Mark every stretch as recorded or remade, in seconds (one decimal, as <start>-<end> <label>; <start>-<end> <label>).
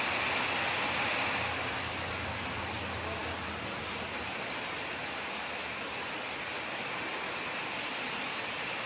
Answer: 0.0-8.9 recorded